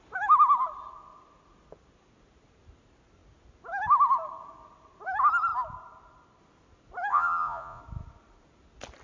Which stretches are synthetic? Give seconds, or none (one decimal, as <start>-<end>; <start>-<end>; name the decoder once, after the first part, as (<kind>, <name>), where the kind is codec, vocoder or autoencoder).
7.1-7.8 (vocoder, Vocos)